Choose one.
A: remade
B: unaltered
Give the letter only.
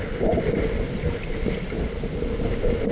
B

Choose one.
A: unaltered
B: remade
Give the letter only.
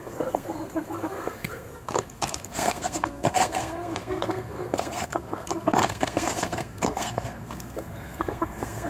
B